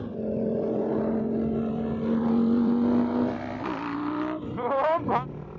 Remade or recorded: remade